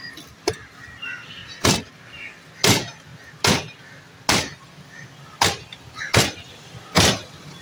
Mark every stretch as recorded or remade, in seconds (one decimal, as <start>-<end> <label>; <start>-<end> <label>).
0.0-7.6 recorded